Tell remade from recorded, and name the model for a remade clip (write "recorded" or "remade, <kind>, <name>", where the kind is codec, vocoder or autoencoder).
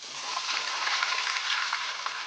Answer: recorded